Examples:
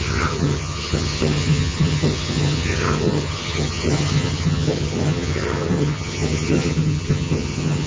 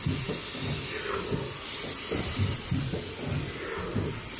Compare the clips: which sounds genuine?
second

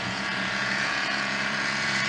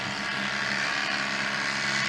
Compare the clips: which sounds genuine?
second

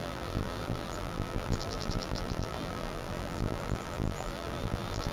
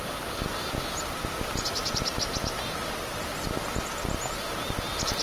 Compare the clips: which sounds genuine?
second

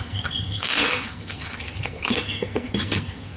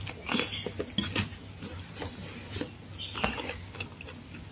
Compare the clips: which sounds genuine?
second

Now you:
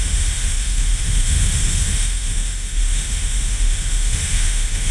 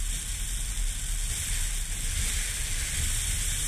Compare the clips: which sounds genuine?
second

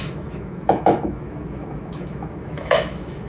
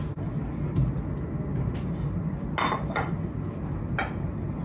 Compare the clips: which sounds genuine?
second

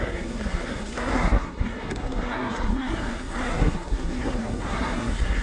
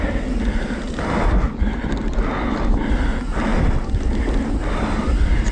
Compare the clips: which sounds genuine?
second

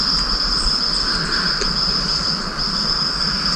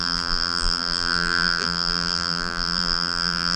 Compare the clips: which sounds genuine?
first